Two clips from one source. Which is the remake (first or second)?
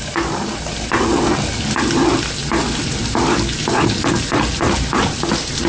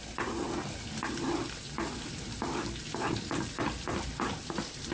second